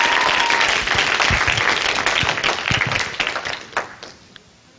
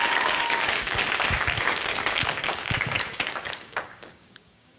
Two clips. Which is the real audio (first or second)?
first